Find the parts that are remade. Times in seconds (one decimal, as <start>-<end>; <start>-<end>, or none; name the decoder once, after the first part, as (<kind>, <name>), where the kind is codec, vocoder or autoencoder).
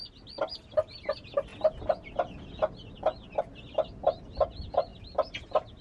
none